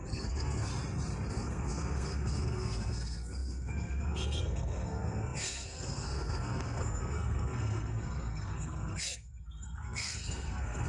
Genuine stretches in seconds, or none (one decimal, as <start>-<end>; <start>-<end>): 0.7-1.3